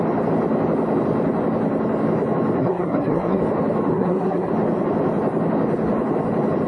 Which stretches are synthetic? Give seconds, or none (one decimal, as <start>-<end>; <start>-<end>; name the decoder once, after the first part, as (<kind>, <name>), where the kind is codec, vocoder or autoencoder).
2.6-3.4 (codec, SNAC); 3.9-4.5